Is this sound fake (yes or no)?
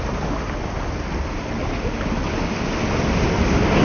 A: no